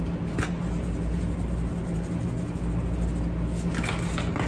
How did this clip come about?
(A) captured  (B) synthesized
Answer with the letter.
A